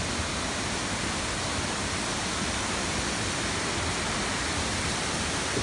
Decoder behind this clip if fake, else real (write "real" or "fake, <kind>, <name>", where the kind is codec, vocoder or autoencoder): real